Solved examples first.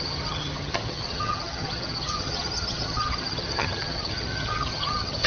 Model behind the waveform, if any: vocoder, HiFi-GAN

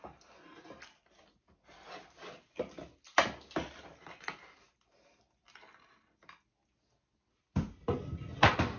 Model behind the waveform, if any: none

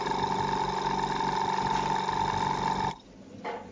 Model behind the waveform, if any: none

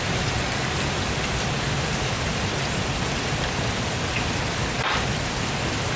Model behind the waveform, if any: none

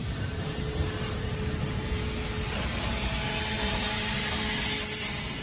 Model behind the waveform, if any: none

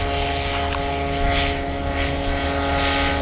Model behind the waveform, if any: none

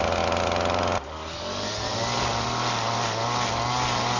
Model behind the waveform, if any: none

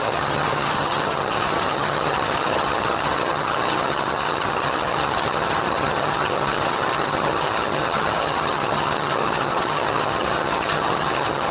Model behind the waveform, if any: vocoder, HiFi-GAN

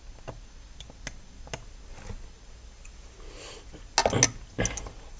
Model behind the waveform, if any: none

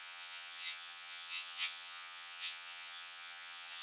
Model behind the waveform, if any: vocoder, HiFi-GAN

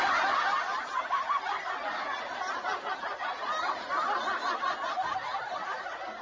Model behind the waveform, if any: none